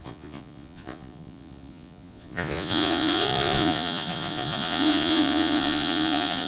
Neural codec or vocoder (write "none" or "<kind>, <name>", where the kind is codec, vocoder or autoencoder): vocoder, Vocos